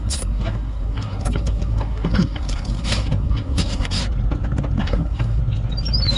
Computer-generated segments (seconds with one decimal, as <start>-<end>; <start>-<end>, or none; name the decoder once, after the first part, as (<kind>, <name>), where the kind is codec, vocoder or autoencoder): 0.0-4.0 (codec, SNAC); 4.8-5.4